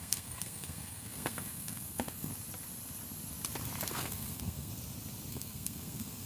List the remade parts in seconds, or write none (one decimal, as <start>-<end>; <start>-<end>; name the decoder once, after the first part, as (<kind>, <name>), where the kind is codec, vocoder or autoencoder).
0.0-2.3 (codec, SNAC); 3.9-4.7; 5.3-6.3